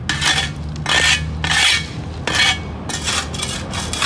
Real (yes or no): yes